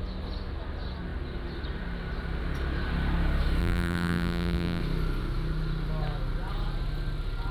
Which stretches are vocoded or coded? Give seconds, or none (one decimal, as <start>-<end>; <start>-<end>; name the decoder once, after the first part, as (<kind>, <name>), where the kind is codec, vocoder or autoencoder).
3.6-4.8 (vocoder, BigVGAN v2)